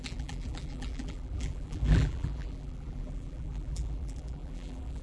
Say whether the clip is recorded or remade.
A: remade